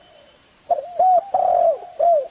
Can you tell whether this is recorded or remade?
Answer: remade